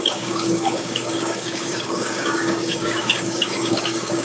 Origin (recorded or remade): remade